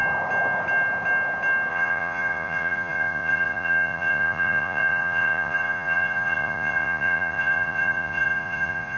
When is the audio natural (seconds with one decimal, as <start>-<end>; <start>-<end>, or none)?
0.0-1.7